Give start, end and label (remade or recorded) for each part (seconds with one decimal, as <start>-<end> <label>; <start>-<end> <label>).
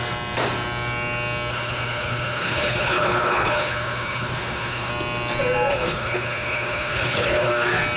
0.0-1.5 recorded; 1.5-4.9 remade; 4.9-5.7 recorded; 5.7-7.5 remade; 7.5-8.0 recorded